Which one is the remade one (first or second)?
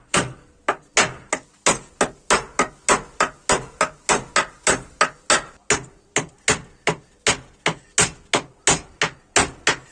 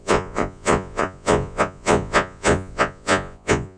second